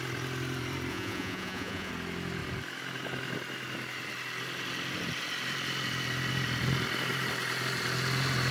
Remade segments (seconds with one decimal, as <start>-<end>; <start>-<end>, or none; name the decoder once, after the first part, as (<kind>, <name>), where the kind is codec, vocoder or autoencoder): 0.9-1.9 (vocoder, Vocos)